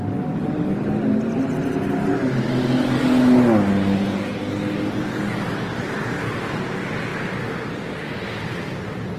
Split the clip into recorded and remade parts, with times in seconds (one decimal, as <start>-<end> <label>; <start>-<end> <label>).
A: 0.0-9.2 recorded